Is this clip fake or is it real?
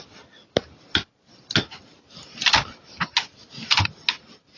real